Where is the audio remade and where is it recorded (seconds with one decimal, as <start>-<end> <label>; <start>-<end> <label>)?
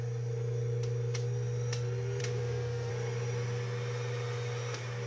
0.0-2.2 recorded; 2.2-2.9 remade; 2.9-5.1 recorded